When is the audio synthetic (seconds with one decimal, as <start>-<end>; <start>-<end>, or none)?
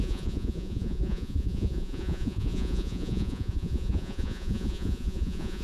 0.0-5.6